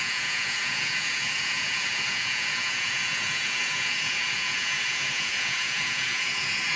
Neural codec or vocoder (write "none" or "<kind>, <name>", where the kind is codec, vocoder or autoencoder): vocoder, Vocos